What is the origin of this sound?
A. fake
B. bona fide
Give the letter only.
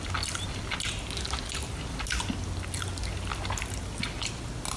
B